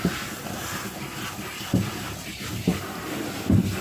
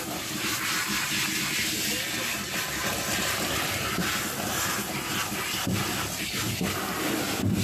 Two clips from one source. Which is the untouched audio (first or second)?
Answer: second